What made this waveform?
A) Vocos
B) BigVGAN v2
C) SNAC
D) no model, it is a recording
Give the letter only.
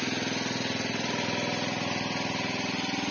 D